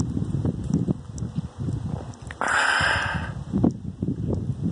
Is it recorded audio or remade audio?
recorded